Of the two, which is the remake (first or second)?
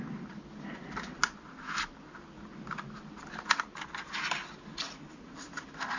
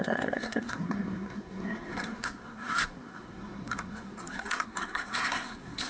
second